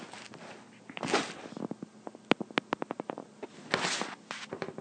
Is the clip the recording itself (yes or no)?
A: yes